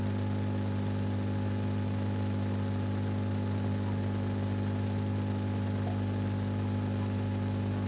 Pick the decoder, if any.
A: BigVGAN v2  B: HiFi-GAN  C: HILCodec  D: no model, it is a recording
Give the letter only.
D